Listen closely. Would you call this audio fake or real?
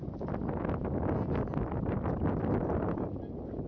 real